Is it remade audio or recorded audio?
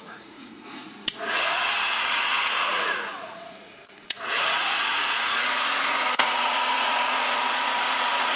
remade